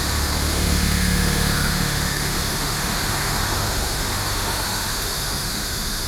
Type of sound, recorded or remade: remade